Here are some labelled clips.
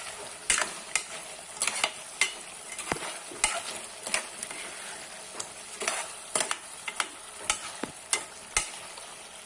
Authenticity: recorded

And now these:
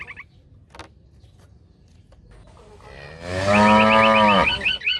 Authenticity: recorded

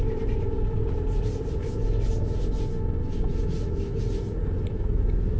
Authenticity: recorded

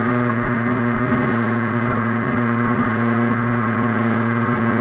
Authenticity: remade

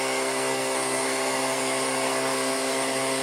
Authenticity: remade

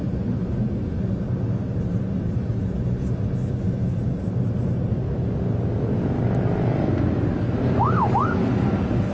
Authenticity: recorded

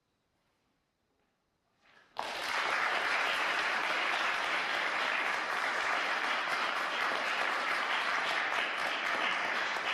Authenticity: remade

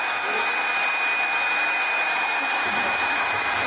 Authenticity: recorded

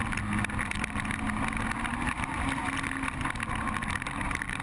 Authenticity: recorded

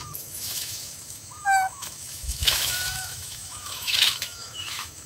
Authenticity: remade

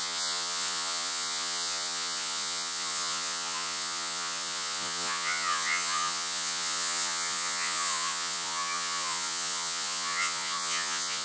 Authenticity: remade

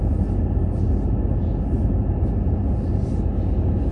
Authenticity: recorded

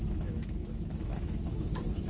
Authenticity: remade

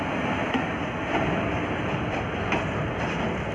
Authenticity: recorded